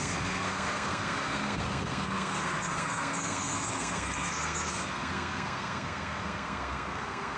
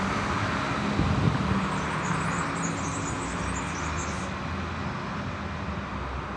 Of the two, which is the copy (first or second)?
first